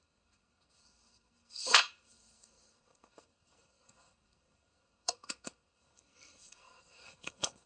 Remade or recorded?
remade